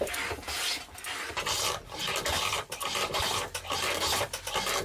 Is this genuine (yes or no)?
yes